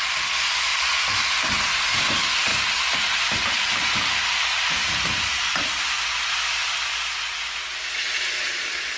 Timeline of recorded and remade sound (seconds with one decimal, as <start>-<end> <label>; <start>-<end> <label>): 0.0-0.7 remade; 0.7-2.0 recorded; 2.0-2.5 remade; 2.5-3.5 recorded; 3.5-6.6 remade; 6.6-8.4 recorded; 8.4-9.0 remade